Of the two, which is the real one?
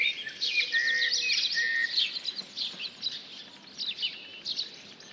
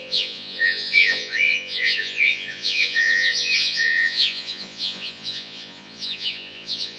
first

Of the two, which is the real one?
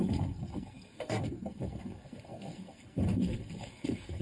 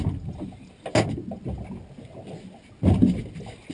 second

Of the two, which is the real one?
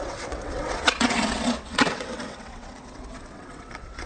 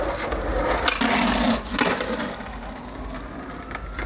second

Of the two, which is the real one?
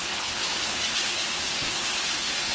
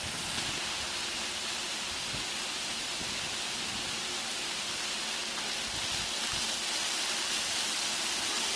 second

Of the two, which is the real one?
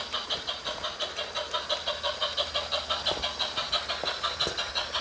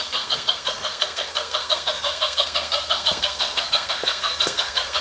first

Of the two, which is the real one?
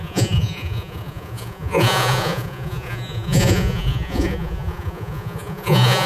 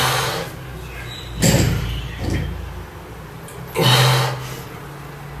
second